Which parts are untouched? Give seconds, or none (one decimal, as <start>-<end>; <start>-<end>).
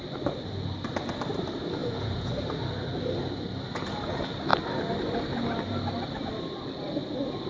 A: 0.0-1.8; 2.3-7.5